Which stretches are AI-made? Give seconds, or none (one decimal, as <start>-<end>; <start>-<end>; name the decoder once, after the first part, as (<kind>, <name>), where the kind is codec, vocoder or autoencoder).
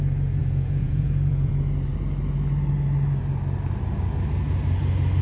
0.4-1.5 (vocoder, Vocos)